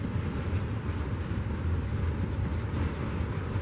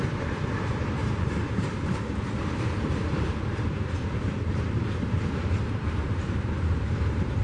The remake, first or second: second